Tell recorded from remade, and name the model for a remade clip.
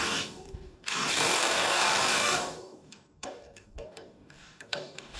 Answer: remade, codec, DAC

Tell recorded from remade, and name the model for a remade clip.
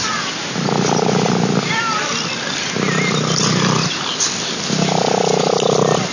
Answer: recorded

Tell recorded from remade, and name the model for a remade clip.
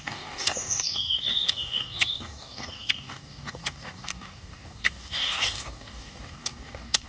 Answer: remade, codec, DAC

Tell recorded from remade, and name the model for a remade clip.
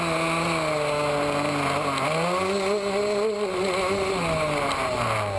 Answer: recorded